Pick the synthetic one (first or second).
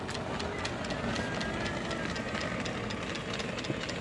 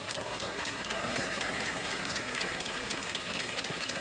second